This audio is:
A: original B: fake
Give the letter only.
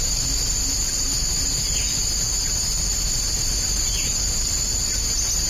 A